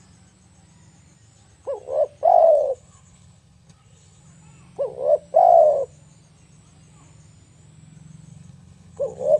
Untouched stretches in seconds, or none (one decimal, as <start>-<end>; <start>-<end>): 0.0-2.4; 4.2-8.3